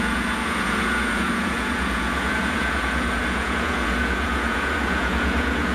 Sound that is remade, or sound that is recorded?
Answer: remade